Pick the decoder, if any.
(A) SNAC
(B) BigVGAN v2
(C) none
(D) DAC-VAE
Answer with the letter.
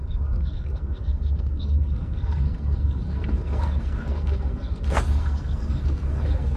A